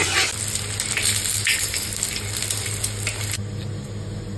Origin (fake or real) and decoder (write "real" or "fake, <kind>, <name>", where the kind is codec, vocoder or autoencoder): real